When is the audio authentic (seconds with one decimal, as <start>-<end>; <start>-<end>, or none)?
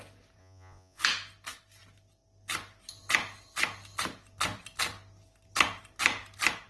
0.0-0.4; 1.0-6.7